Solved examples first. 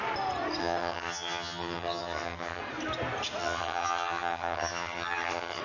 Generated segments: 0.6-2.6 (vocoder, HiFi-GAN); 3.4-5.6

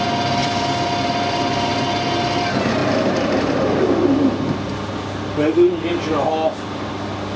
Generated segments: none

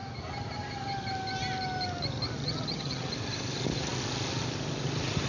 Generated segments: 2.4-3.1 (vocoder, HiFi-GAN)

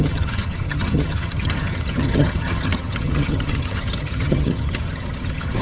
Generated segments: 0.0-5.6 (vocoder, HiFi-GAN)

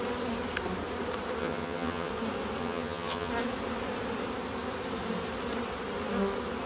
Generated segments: 1.4-2.1 (vocoder, HiFi-GAN); 2.6-3.3